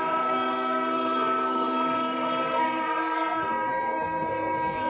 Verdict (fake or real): fake